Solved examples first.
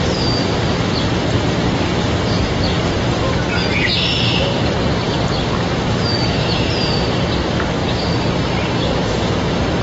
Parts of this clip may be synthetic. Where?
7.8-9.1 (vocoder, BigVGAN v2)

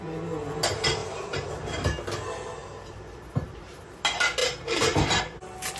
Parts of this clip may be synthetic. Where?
1.0-1.5 (vocoder, BigVGAN v2); 2.6-3.8; 4.4-5.2

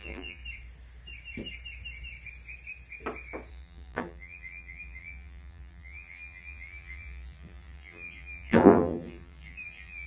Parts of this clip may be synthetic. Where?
0.0-0.4 (vocoder, BigVGAN v2); 3.5-10.1

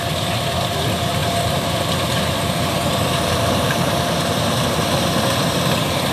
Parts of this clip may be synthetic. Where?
1.2-4.9 (vocoder, BigVGAN v2)